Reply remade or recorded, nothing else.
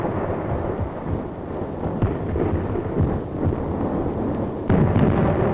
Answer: remade